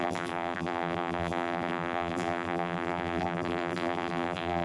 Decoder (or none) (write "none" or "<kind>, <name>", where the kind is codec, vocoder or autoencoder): vocoder, BigVGAN v2